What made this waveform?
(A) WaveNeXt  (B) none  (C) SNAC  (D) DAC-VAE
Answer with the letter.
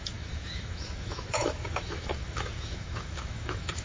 D